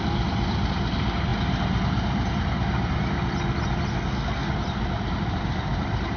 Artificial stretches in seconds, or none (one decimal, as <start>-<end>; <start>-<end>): 3.9-4.5